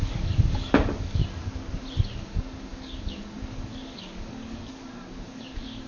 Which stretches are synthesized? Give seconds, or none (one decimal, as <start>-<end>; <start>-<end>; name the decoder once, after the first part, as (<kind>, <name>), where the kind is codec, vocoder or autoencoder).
0.0-1.2 (codec, DAC); 2.0-5.9